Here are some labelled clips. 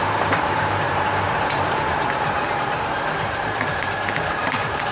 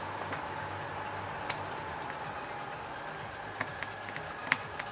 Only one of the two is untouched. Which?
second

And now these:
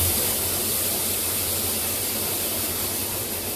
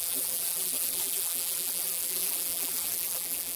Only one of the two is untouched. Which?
first